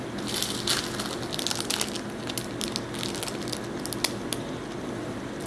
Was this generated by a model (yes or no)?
no